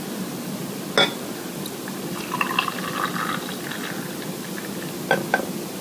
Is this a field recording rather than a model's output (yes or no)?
yes